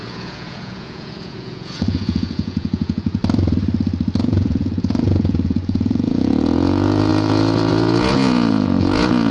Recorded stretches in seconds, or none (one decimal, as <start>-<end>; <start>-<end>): 3.2-4.2